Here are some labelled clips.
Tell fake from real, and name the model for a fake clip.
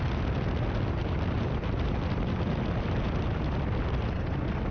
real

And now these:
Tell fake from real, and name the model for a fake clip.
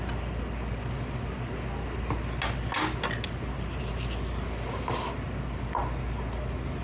real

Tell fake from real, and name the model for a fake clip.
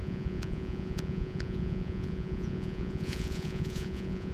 fake, vocoder, Vocos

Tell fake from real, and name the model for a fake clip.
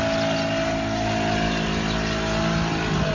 real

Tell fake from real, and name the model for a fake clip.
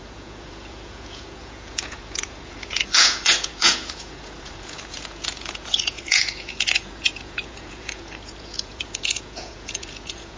fake, vocoder, Vocos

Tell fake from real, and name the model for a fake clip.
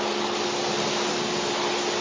real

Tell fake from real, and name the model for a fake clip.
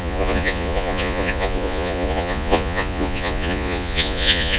fake, vocoder, Vocos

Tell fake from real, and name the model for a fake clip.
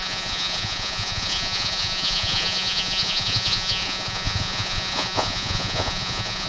fake, vocoder, Vocos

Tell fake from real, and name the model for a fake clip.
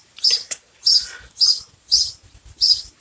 real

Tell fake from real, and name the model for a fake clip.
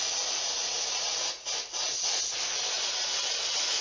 fake, vocoder, Vocos